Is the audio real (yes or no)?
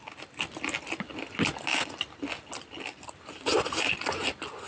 yes